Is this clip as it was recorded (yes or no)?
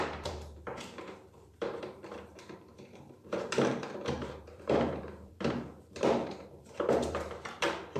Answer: no